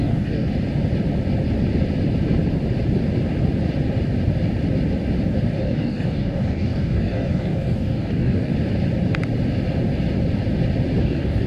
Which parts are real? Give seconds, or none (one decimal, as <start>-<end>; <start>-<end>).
0.5-5.6; 8.5-11.0